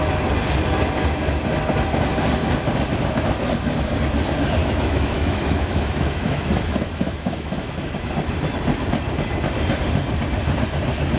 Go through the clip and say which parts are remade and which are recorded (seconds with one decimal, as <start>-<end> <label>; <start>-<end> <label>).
0.0-4.6 recorded; 4.6-8.1 remade; 8.1-11.2 recorded